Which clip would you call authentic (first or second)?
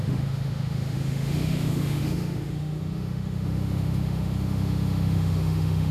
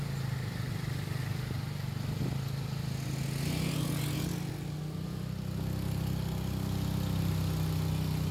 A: second